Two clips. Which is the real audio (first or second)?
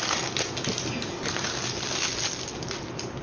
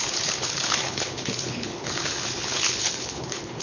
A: first